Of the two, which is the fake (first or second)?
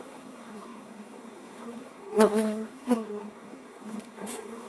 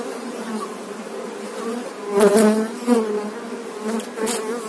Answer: first